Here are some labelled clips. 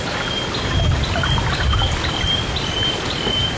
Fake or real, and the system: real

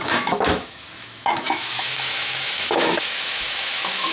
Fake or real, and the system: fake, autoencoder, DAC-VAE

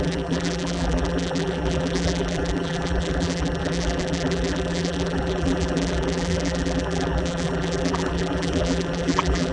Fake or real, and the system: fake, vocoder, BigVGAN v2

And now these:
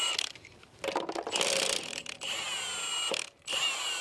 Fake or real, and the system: real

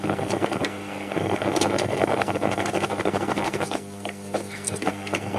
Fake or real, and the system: fake, codec, SNAC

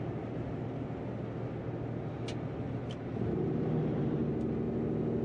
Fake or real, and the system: real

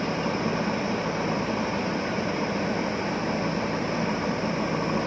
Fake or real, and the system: real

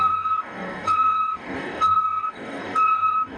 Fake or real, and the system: fake, codec, DAC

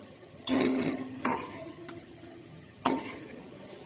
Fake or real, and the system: fake, vocoder, HiFi-GAN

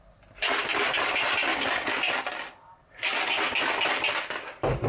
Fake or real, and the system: real